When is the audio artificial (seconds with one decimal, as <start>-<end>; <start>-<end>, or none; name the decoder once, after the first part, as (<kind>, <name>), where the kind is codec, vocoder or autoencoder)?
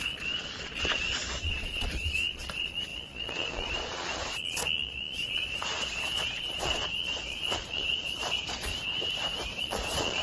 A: 0.0-8.7 (vocoder, Vocos); 9.6-10.2